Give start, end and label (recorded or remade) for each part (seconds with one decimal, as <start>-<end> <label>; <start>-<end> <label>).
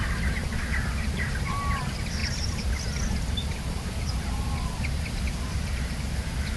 0.0-6.6 recorded